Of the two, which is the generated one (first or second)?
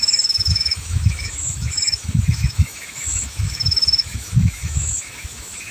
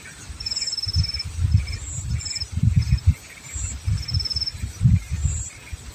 first